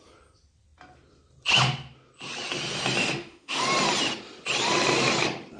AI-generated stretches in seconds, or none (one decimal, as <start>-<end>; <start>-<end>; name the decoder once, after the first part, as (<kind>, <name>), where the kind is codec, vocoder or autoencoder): 3.0-3.6 (autoencoder, DAC-VAE)